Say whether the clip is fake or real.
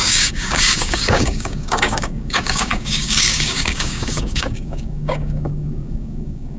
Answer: fake